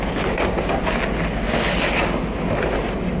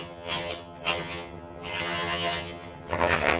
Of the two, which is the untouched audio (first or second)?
first